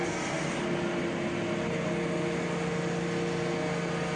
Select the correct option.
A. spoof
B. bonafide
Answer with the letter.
B